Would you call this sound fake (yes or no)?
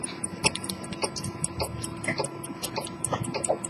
yes